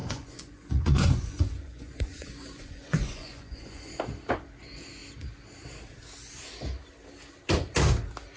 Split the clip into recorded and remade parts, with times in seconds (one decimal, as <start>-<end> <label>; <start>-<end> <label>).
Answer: 0.0-3.9 remade; 3.9-8.4 recorded